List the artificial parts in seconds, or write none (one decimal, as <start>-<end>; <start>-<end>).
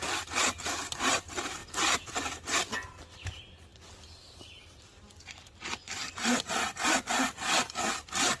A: none